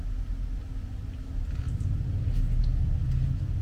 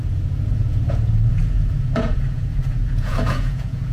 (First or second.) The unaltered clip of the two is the first